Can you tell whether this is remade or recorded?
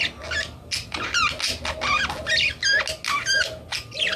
recorded